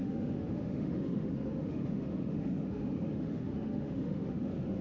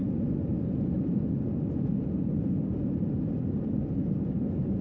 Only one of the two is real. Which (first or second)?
second